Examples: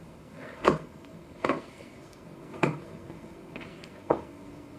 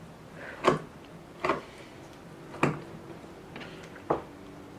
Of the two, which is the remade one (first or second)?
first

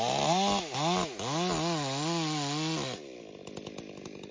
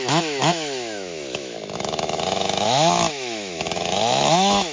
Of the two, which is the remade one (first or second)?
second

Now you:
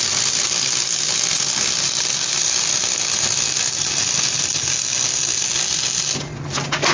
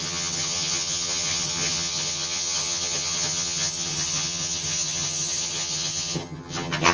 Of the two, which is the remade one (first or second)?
second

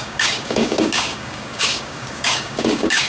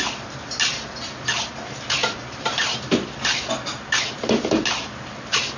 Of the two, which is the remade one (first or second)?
first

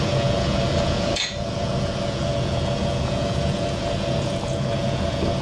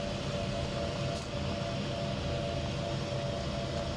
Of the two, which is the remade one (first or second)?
first